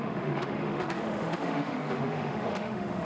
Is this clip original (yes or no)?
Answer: no